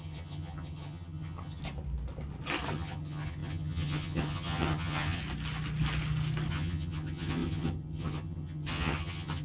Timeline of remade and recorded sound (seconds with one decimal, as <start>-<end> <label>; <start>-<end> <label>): 0.0-1.6 remade; 1.6-2.7 recorded; 2.7-5.2 remade; 5.2-6.5 recorded; 6.5-9.4 remade